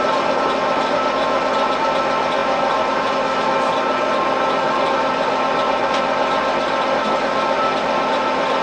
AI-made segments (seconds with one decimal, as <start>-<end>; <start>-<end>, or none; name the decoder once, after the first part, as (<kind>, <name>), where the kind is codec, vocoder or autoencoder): none